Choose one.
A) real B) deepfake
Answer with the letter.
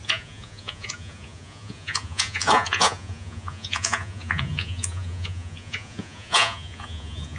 B